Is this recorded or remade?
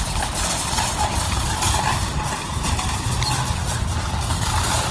recorded